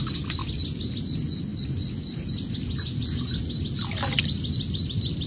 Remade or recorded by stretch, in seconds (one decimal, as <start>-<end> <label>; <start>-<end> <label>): 0.0-5.3 recorded